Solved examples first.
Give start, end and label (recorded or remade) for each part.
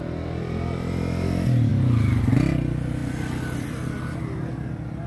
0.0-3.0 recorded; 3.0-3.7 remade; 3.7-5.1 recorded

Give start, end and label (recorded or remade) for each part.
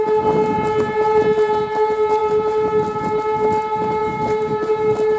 0.0-5.2 recorded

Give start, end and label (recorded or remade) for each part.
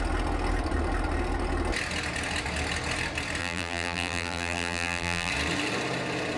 0.0-3.4 recorded; 3.4-5.3 remade; 5.3-6.4 recorded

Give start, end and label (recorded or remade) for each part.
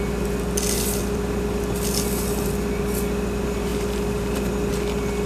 0.0-3.7 recorded; 3.7-4.7 remade; 4.7-5.3 recorded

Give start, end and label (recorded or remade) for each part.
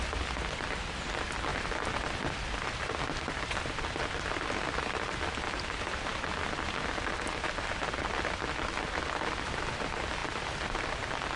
0.0-1.5 recorded; 1.5-3.9 remade; 3.9-10.2 recorded; 10.2-10.9 remade; 10.9-11.4 recorded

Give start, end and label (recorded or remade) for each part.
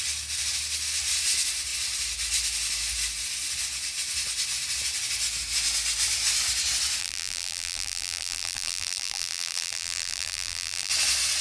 0.0-7.0 recorded; 7.0-10.9 remade; 10.9-11.4 recorded